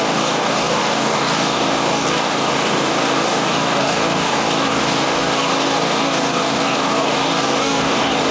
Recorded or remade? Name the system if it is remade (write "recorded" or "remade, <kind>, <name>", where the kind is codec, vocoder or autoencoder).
remade, codec, DAC